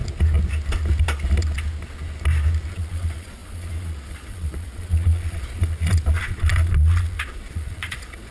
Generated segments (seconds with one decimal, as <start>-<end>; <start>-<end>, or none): 2.7-8.3